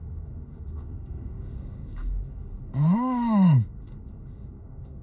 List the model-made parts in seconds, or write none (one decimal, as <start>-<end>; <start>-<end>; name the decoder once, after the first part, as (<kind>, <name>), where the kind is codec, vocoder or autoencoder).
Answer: 0.0-5.0 (autoencoder, DAC-VAE)